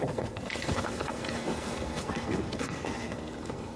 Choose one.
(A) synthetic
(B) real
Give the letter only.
A